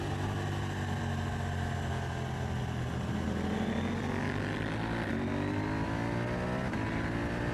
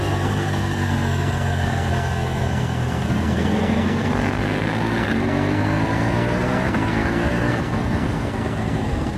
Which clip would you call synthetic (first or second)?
second